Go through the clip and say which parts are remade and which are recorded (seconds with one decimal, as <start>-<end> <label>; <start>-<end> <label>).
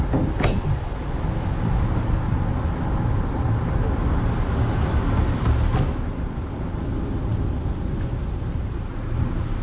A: 0.0-9.6 recorded